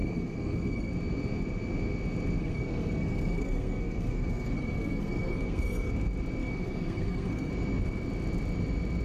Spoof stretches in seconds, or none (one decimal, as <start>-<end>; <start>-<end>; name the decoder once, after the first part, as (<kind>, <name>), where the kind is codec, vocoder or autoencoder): 0.0-0.9 (codec, SNAC); 2.4-5.9; 6.4-7.5